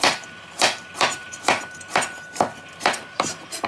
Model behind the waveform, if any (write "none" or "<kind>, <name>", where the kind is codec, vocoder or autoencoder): vocoder, BigVGAN v2